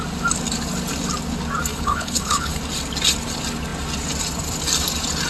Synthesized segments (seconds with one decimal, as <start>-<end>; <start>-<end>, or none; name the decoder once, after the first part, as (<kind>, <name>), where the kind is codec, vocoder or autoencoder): 1.7-2.6 (codec, HILCodec)